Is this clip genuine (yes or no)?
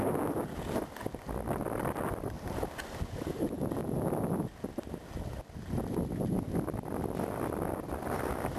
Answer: yes